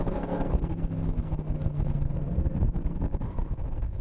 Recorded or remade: remade